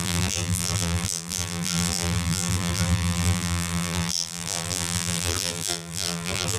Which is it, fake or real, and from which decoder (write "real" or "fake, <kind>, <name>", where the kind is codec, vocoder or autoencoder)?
fake, vocoder, BigVGAN v2